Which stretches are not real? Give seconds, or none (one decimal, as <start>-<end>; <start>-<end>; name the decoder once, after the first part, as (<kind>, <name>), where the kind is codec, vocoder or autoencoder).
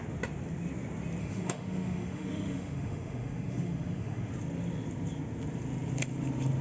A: 1.2-4.3 (autoencoder, DAC-VAE)